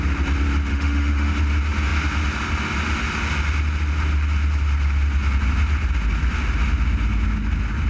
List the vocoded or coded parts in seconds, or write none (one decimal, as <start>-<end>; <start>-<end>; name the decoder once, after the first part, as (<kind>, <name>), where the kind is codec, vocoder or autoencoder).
0.7-1.3 (autoencoder, DAC-VAE)